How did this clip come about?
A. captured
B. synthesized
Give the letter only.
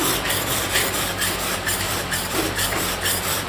B